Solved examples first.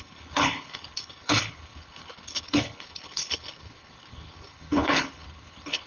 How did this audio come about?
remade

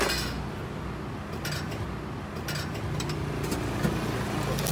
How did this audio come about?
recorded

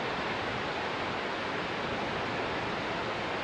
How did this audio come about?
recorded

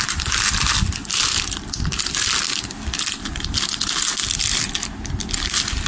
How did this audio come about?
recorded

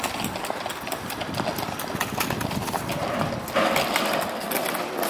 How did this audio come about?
recorded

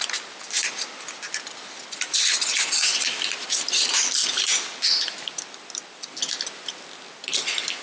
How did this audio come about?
recorded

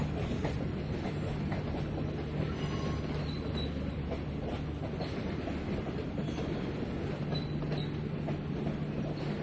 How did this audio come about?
recorded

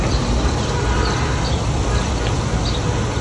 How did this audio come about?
recorded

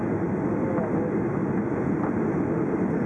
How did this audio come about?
recorded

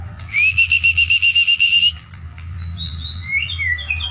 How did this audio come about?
remade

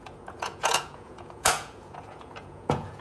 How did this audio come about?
remade